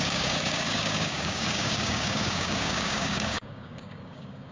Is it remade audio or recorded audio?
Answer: remade